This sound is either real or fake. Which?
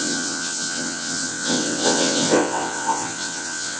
fake